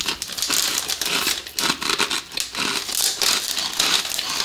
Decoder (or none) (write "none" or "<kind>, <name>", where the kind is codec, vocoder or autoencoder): none